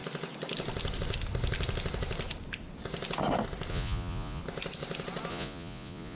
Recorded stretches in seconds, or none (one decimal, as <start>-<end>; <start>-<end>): 0.0-3.7; 4.4-5.3